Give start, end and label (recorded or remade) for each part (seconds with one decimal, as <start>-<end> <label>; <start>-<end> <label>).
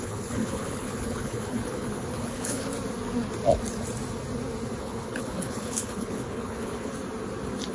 0.0-2.7 remade; 2.7-4.8 recorded; 4.8-6.9 remade; 6.9-7.7 recorded